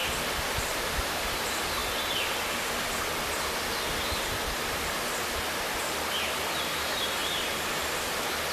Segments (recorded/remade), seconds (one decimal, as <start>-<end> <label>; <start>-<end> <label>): 0.0-0.9 remade; 0.9-7.2 recorded; 7.2-7.9 remade; 7.9-8.5 recorded